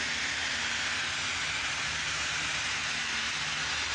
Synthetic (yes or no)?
no